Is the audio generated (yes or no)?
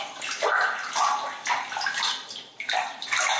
no